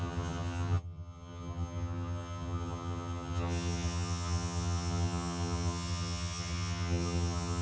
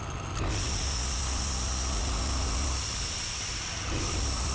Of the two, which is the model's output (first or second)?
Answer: first